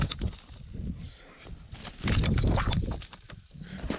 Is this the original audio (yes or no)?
yes